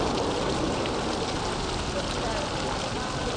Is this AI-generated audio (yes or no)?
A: no